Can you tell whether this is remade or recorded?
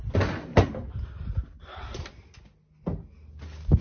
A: recorded